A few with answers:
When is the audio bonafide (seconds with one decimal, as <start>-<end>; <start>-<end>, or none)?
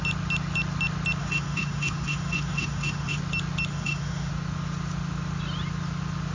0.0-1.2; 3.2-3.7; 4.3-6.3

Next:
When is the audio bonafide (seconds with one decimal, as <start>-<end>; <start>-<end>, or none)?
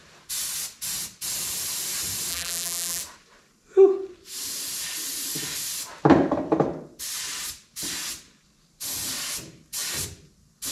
0.0-2.3; 3.0-10.7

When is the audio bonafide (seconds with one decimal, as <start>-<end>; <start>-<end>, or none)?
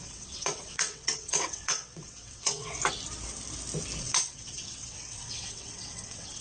2.8-4.0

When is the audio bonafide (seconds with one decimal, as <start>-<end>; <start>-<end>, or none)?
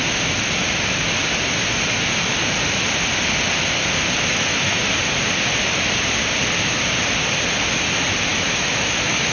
0.0-4.3; 4.8-8.3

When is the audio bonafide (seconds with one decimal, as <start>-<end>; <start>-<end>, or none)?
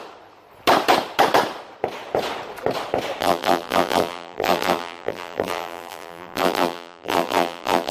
0.0-3.2